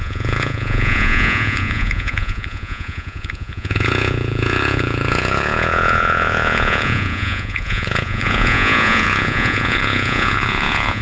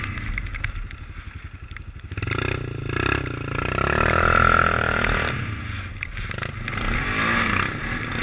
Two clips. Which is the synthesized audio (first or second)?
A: first